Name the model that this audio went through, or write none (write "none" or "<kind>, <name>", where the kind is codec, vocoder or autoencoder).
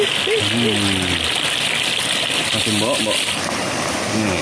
none